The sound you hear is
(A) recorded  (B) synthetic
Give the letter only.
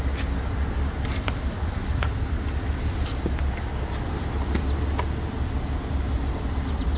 A